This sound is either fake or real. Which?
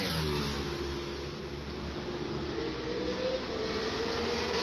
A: real